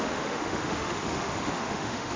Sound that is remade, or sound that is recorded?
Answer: remade